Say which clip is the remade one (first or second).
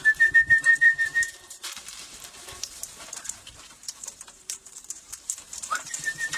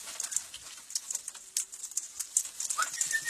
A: first